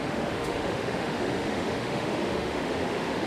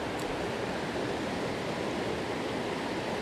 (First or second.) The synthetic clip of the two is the first